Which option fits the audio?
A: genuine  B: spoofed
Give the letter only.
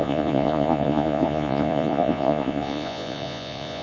B